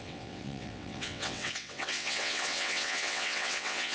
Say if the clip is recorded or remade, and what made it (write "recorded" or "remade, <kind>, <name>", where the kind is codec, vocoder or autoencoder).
remade, vocoder, WaveNeXt